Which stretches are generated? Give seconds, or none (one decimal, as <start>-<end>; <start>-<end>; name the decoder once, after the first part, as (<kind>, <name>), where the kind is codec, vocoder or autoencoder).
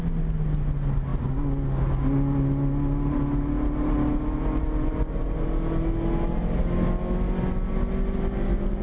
none